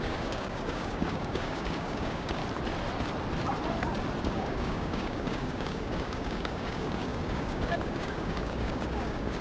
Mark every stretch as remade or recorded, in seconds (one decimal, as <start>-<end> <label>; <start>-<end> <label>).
0.0-2.4 remade; 2.4-4.2 recorded; 4.2-9.4 remade

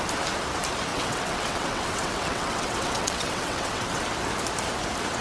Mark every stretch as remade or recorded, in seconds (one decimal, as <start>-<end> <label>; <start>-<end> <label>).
0.0-0.9 recorded; 0.9-4.0 remade; 4.0-5.2 recorded

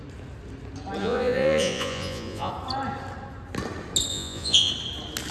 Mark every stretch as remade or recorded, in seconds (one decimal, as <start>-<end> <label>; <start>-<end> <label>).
0.0-1.0 recorded; 1.0-2.5 remade; 2.5-4.1 recorded; 4.1-4.7 remade; 4.7-5.3 recorded

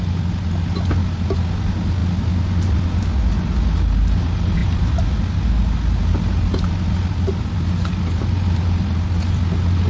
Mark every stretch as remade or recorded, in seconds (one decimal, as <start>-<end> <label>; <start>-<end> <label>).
0.0-9.9 recorded